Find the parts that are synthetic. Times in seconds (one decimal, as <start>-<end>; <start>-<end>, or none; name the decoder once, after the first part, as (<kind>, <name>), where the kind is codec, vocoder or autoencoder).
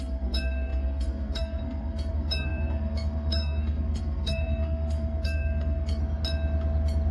0.0-6.0 (codec, SNAC)